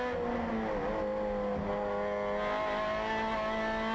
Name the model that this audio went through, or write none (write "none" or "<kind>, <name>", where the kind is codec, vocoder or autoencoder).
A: none